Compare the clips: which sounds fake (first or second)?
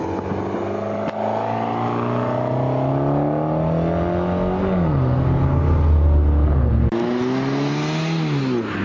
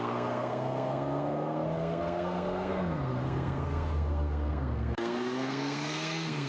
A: second